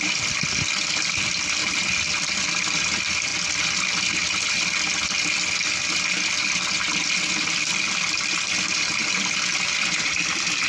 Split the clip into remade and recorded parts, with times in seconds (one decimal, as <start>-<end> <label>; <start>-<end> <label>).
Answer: 0.0-3.3 remade; 3.3-7.5 recorded; 7.5-9.0 remade; 9.0-10.0 recorded; 10.0-10.7 remade